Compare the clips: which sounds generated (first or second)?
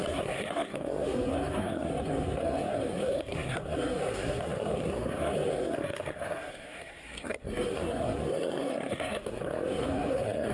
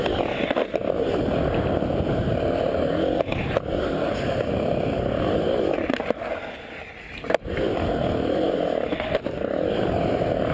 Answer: first